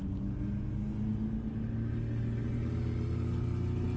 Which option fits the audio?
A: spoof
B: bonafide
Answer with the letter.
B